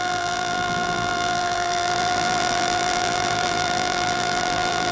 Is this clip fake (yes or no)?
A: yes